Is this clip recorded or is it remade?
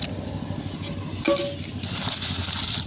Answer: recorded